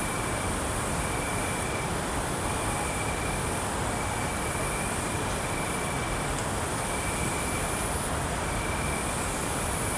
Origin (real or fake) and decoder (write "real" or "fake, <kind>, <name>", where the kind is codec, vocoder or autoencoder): real